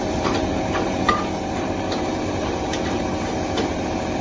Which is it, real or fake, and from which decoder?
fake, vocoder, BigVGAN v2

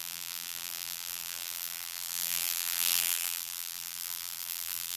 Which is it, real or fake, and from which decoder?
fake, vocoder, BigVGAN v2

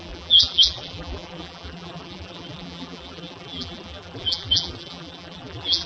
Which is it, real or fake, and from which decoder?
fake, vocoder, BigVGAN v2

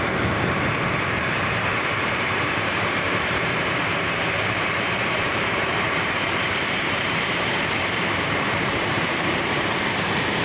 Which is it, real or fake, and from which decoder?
fake, vocoder, BigVGAN v2